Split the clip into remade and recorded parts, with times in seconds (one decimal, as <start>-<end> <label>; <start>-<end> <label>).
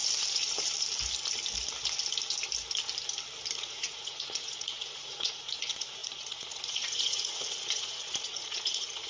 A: 0.0-3.6 recorded; 3.6-9.1 remade